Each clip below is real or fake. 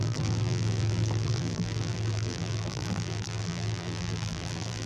fake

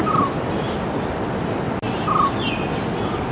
real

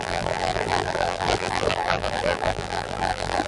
fake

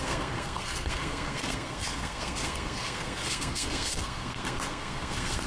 fake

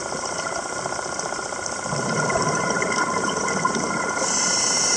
fake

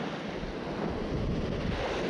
real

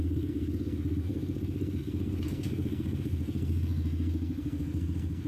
fake